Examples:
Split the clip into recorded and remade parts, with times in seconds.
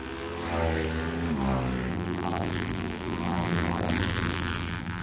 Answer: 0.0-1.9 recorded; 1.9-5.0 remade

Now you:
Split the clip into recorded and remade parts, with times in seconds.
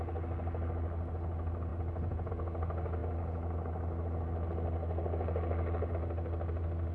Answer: 0.0-6.9 recorded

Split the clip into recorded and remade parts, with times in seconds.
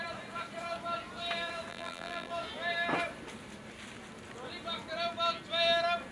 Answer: 0.0-1.7 recorded; 1.7-2.3 remade; 2.3-6.1 recorded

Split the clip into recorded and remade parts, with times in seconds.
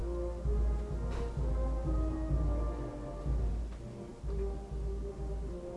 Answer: 0.0-5.8 recorded